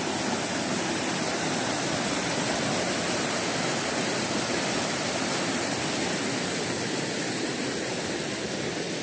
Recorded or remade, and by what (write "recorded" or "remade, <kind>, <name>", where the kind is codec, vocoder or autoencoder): recorded